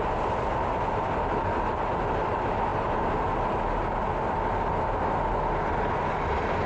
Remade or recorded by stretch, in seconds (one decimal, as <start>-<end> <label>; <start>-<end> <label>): 0.0-6.7 recorded